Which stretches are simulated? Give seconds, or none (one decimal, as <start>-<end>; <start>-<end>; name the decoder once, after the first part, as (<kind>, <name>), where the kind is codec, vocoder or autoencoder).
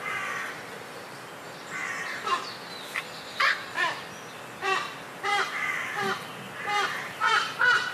0.8-1.8 (vocoder, BigVGAN v2); 6.5-7.9